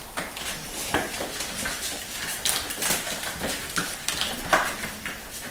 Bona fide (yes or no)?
yes